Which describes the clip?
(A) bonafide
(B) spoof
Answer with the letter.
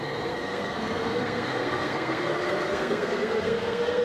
B